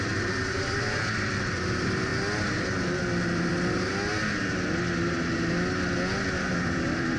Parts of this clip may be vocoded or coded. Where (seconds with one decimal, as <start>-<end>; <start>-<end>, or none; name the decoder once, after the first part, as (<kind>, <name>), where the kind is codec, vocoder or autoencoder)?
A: 0.0-2.1 (vocoder, BigVGAN v2); 6.4-7.2